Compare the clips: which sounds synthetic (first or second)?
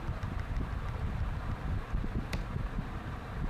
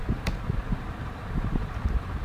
second